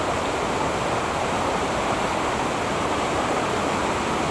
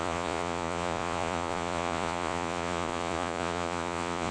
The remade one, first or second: second